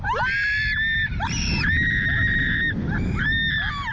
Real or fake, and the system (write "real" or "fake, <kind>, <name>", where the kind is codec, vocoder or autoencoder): real